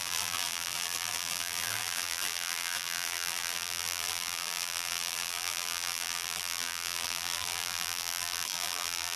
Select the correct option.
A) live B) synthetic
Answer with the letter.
B